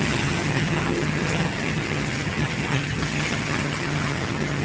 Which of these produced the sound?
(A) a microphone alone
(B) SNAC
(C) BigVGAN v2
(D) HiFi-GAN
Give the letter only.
D